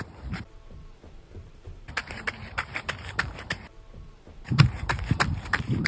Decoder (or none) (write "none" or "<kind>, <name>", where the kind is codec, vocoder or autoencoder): vocoder, BigVGAN v2